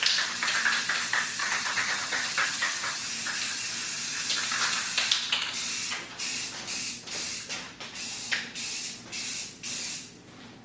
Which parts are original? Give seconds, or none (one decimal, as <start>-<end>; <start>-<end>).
0.0-1.4; 3.0-10.6

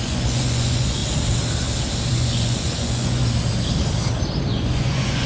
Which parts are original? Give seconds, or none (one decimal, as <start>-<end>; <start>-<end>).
1.0-2.1; 3.2-4.5

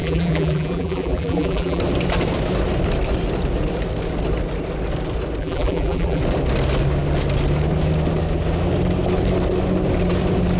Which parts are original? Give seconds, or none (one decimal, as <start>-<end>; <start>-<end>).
1.8-5.4; 6.2-10.6

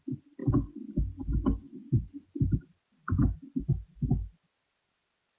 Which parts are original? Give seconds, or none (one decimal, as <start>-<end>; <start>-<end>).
0.0-5.4